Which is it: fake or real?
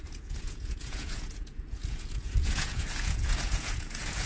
fake